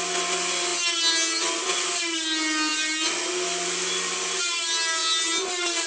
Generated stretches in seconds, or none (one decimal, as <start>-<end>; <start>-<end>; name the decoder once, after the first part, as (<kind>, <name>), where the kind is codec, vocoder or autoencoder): none